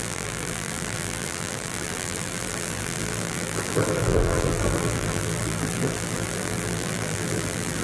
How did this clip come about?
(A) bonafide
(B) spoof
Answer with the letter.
B